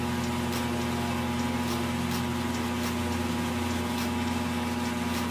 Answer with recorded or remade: recorded